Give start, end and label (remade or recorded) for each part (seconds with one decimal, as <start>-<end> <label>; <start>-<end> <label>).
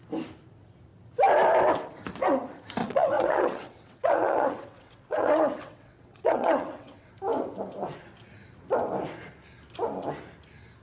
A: 0.0-2.8 recorded; 2.8-7.1 remade; 7.1-10.8 recorded